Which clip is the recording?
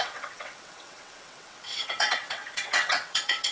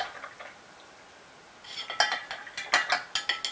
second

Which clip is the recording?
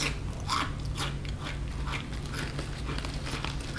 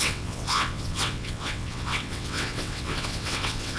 first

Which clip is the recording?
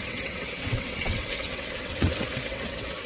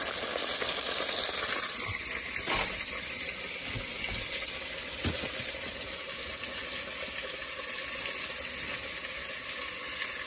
second